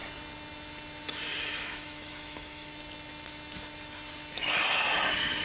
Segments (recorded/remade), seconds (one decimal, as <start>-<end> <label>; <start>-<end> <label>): 0.0-1.4 recorded; 1.4-2.7 remade; 2.7-5.4 recorded